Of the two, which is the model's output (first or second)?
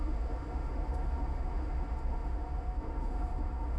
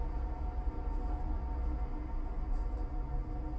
first